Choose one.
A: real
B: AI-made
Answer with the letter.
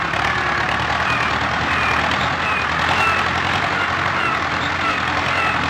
A